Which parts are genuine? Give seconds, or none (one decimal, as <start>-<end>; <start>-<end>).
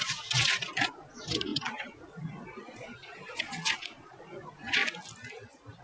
4.8-5.8